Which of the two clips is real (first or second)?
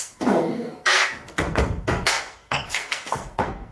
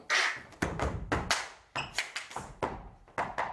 second